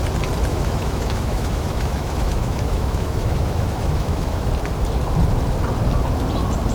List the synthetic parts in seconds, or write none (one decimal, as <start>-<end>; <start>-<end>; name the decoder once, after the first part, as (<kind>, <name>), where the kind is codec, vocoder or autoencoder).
0.5-4.5 (autoencoder, DAC-VAE)